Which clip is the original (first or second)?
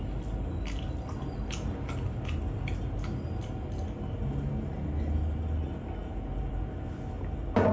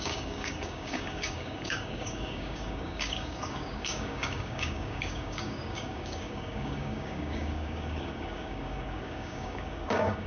first